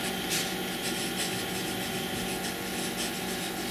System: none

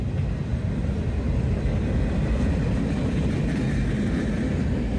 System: none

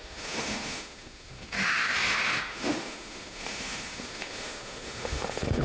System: autoencoder, DAC-VAE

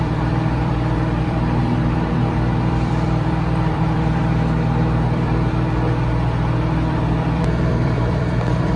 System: vocoder, BigVGAN v2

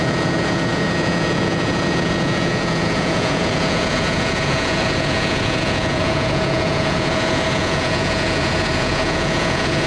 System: vocoder, Vocos